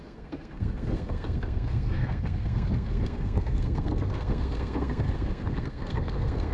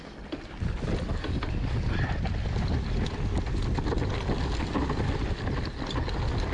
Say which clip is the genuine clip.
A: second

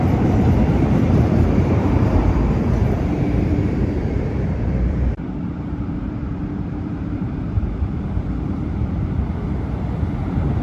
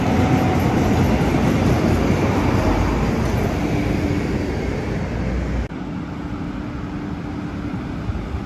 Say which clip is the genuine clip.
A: second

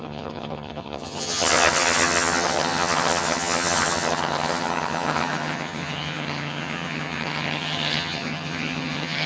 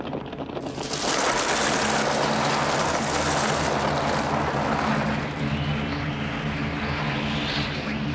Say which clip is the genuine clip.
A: second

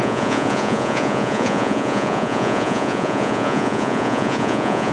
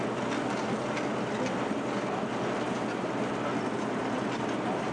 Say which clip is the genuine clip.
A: second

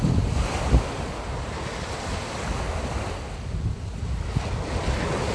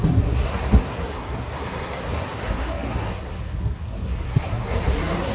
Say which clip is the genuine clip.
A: first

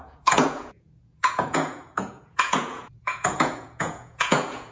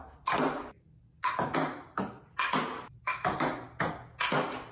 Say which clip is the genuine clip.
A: second